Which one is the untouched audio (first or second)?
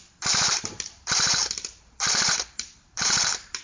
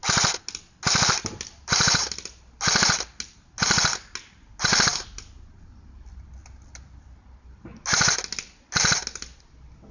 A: second